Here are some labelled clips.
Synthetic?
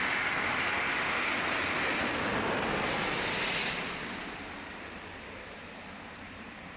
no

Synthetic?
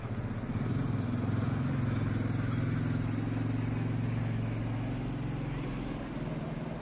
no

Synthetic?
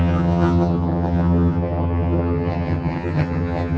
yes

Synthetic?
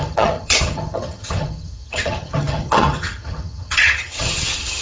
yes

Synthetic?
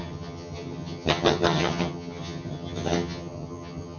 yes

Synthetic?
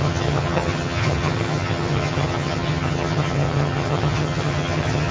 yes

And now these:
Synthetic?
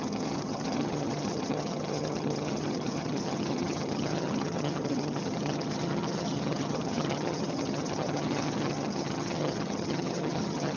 yes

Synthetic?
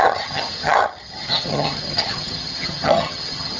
yes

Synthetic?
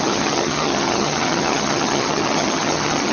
yes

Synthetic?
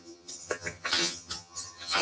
yes